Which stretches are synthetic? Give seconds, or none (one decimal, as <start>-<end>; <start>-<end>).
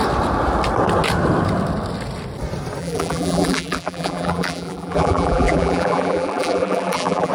2.8-7.3